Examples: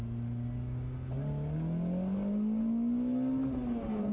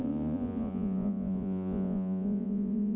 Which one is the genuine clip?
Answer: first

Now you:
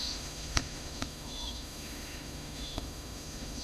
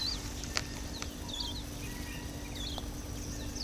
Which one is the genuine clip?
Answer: second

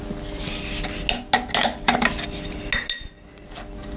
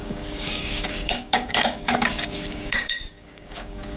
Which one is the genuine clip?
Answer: first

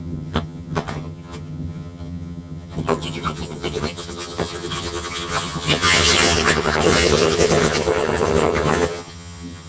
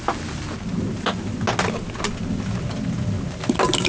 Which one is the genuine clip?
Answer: second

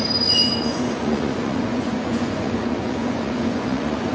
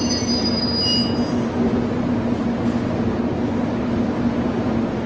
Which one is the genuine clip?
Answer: second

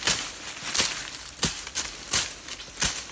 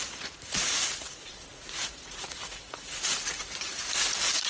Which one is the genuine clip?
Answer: first